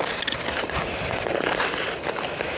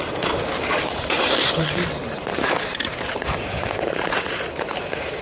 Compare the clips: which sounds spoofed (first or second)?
second